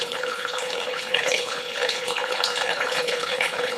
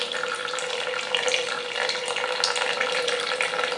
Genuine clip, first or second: second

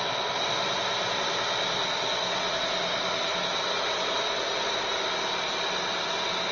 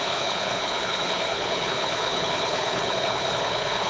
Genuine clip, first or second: first